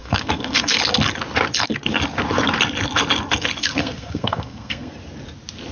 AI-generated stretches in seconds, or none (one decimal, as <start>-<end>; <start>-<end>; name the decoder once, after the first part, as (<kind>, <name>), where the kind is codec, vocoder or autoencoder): 0.0-0.8 (codec, SNAC); 3.6-4.9

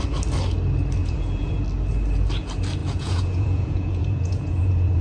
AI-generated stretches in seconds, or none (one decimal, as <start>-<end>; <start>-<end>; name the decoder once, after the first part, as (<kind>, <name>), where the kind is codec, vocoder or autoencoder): 1.0-1.5 (vocoder, Vocos); 2.8-5.0

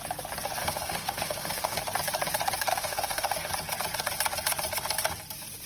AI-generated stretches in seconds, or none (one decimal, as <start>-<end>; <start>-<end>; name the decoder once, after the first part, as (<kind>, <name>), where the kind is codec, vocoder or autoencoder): 0.6-1.8 (autoencoder, DAC-VAE); 2.7-3.5

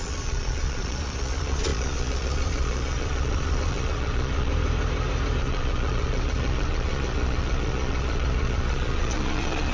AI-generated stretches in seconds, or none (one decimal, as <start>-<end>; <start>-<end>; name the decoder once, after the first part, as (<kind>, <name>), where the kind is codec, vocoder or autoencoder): 0.0-4.5 (vocoder, Vocos); 5.4-9.7

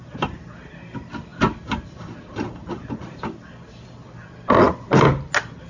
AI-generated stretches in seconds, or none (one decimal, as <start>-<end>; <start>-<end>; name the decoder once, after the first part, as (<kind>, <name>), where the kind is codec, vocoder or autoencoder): none

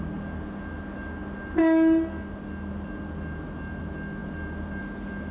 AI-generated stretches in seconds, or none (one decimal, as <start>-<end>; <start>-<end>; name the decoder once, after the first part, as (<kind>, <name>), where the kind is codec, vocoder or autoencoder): none